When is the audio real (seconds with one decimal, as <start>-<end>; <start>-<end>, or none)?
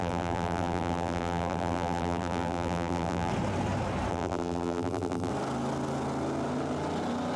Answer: 3.3-4.1; 5.3-7.4